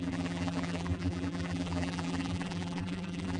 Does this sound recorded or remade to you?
remade